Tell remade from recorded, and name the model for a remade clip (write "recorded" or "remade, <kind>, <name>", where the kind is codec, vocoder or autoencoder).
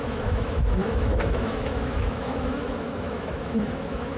remade, autoencoder, DAC-VAE